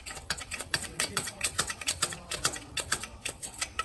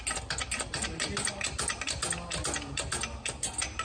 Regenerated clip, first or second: first